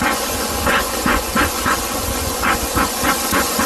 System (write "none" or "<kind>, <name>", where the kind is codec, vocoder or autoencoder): vocoder, Vocos